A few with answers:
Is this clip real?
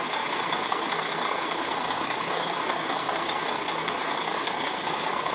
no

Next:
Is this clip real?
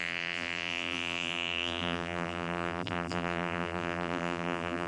no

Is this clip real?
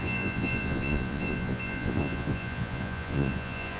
no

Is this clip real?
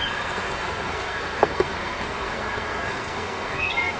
no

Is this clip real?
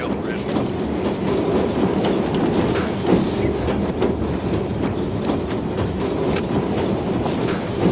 yes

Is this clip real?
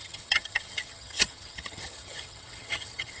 no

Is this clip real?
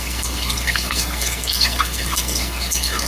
no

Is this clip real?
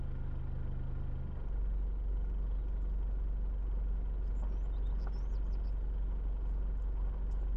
yes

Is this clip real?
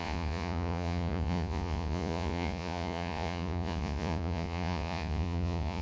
no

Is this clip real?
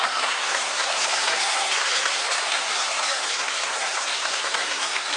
no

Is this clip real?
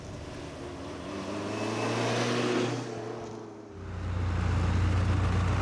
yes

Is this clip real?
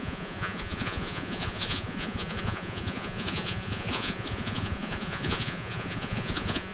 no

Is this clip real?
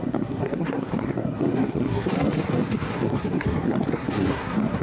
no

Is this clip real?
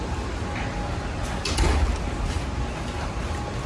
yes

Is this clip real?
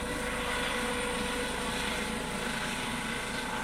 yes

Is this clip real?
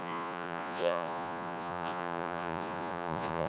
no